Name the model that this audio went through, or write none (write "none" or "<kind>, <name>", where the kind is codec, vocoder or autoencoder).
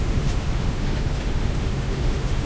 autoencoder, DAC-VAE